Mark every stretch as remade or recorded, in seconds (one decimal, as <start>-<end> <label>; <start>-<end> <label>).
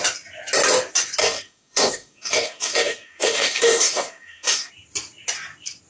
0.0-1.2 recorded; 1.2-4.7 remade; 4.7-5.9 recorded